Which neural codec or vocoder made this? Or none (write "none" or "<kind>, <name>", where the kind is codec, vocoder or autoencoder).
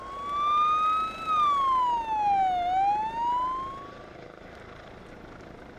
none